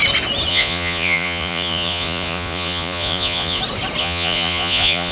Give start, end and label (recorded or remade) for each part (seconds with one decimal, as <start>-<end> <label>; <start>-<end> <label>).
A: 0.0-0.5 recorded; 0.5-3.6 remade; 3.6-4.0 recorded; 4.0-5.1 remade